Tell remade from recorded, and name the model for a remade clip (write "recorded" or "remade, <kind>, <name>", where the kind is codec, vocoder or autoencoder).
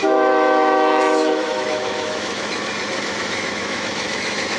remade, autoencoder, DAC-VAE